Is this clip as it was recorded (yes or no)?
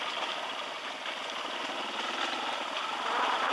yes